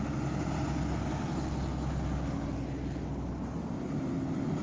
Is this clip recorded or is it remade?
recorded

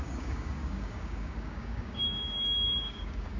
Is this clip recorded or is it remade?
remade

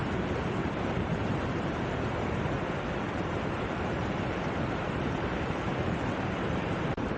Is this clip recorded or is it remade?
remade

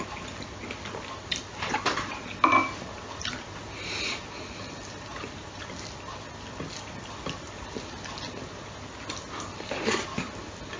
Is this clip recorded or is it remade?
recorded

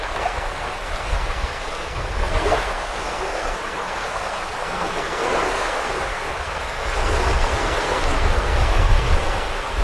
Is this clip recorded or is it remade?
remade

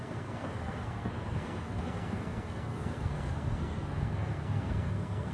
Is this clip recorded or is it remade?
remade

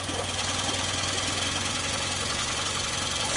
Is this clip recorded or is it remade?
remade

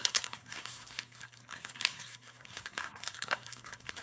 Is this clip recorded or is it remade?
remade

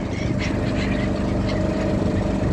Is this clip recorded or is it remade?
recorded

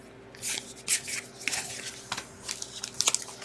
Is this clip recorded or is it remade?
recorded